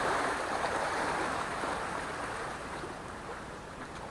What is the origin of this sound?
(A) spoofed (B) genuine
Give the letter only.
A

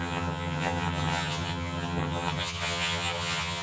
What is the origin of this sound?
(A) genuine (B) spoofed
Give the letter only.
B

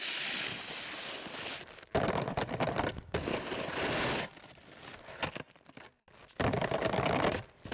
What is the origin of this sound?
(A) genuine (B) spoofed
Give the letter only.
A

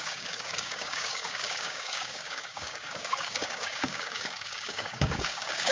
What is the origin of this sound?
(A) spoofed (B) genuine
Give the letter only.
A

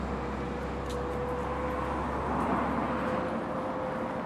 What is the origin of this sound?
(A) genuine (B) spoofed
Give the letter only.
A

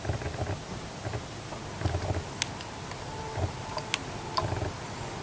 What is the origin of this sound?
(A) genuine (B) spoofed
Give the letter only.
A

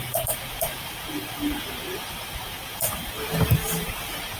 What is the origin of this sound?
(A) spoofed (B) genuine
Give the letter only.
A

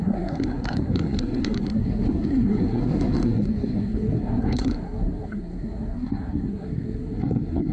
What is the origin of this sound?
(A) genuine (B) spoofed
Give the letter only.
B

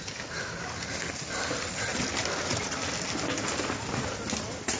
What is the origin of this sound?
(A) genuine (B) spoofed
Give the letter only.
A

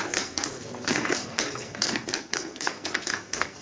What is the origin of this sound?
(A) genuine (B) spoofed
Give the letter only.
B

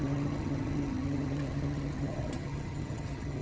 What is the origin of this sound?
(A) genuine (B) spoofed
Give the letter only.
B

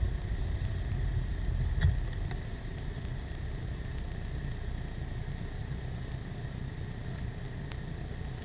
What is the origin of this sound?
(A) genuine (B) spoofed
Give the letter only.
A